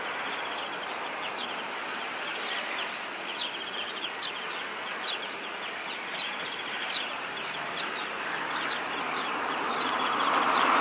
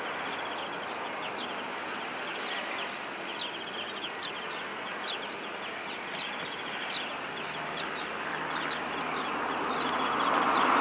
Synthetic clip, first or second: first